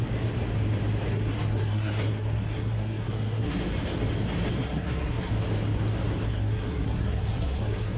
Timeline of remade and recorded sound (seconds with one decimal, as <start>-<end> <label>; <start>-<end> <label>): 0.0-1.1 recorded; 1.1-3.6 remade; 3.6-4.6 recorded; 4.6-5.3 remade; 5.3-6.3 recorded; 6.3-8.0 remade